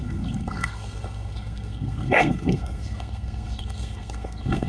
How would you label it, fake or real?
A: fake